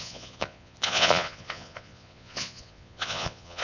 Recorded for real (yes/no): no